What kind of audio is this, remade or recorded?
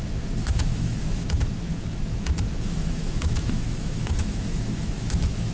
remade